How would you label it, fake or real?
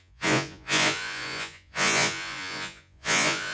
fake